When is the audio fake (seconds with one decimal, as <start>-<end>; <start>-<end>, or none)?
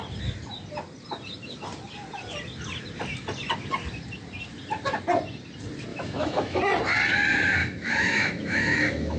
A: 5.9-6.6; 7.6-9.2